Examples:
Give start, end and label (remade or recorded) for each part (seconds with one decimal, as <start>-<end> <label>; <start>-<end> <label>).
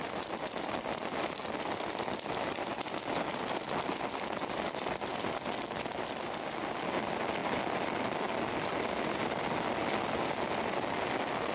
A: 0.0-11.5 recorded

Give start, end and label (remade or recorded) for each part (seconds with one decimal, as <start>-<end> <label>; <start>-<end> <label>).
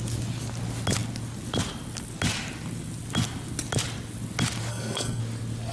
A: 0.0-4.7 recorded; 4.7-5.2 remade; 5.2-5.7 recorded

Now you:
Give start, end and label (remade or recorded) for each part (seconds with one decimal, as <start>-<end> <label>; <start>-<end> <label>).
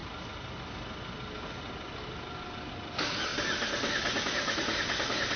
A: 0.0-5.4 recorded